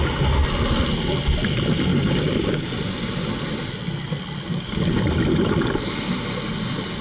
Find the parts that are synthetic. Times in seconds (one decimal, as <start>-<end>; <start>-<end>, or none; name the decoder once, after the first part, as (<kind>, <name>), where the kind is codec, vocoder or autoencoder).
1.9-2.7 (codec, DAC); 4.5-5.0